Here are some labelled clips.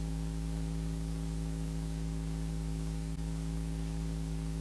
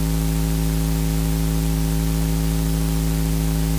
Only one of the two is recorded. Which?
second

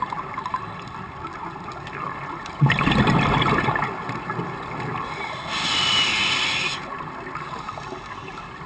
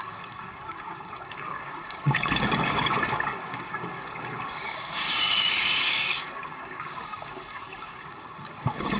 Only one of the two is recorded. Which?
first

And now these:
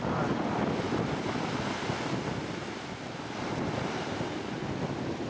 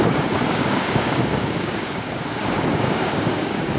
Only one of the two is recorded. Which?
first